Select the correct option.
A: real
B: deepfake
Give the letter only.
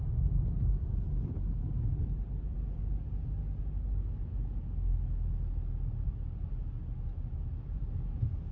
A